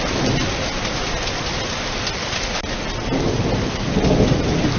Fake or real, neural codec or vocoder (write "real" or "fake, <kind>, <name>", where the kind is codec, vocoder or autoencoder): real